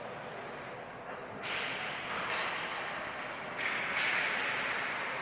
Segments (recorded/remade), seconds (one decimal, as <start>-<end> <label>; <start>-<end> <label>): 0.0-5.2 recorded